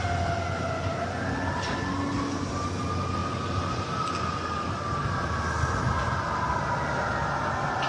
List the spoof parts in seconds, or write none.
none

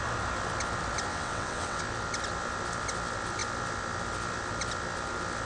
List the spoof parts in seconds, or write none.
1.1-1.8